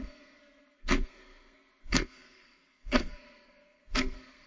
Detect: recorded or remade remade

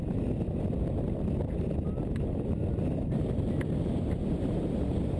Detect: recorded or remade recorded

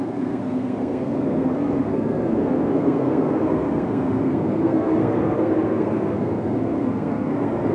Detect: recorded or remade remade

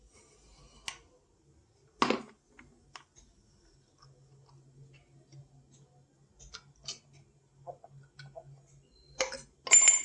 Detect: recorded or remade recorded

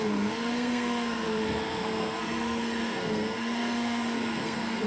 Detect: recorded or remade remade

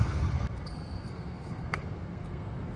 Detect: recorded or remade remade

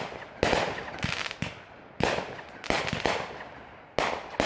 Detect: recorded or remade recorded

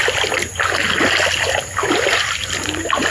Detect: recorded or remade recorded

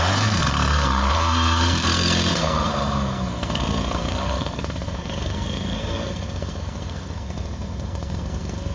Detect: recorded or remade remade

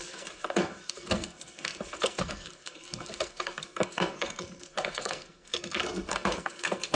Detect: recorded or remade remade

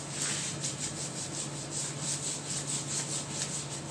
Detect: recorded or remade recorded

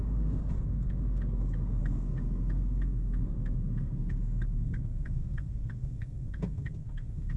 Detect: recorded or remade remade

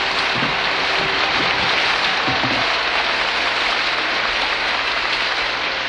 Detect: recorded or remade recorded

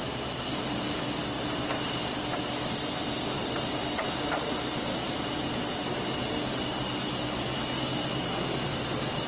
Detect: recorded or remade recorded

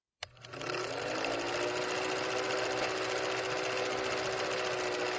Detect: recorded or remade recorded